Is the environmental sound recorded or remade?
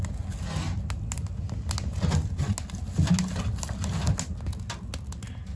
recorded